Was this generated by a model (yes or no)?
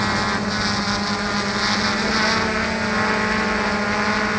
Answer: no